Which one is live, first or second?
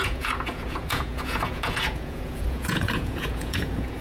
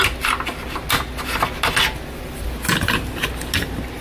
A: second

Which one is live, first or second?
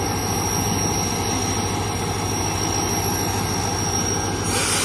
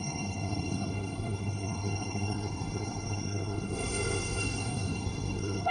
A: first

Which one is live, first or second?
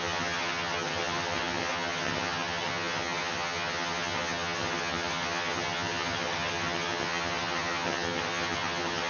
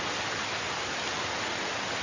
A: second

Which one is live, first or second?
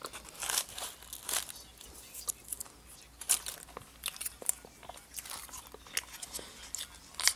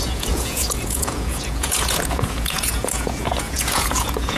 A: first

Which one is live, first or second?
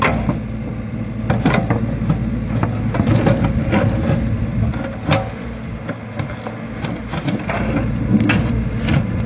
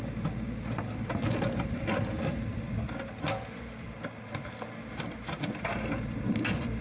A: first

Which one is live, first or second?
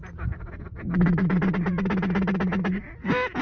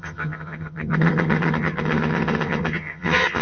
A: first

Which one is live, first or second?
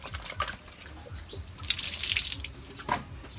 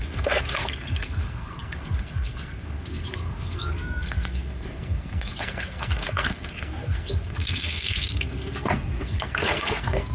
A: first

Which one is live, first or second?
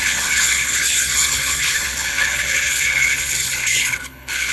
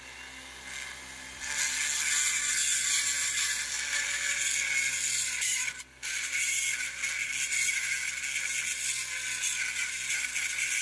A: second